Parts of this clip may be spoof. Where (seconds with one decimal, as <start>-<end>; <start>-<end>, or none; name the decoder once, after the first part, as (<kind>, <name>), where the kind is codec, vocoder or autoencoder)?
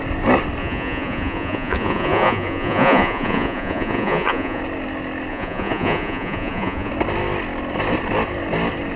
0.6-4.6 (vocoder, Vocos); 5.3-6.9